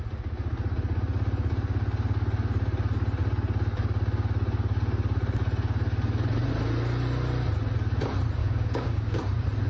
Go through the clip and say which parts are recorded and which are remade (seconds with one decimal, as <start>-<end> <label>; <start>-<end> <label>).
0.0-8.4 recorded; 8.4-9.2 remade; 9.2-9.7 recorded